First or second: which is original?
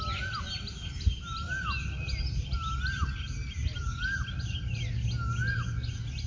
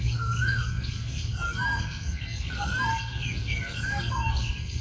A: first